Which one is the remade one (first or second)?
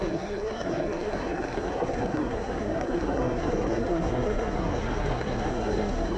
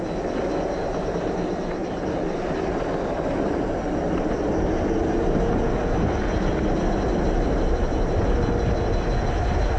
first